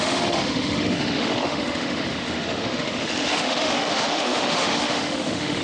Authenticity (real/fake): fake